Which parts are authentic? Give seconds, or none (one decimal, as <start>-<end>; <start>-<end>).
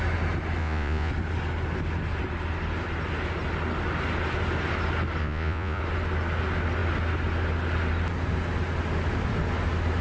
0.0-0.6; 1.1-5.2; 5.8-10.0